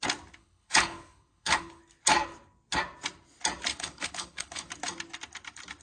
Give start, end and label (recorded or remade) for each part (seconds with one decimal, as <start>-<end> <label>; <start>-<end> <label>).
0.0-0.4 recorded; 0.4-1.8 remade; 1.8-3.7 recorded; 3.7-4.7 remade; 4.7-5.8 recorded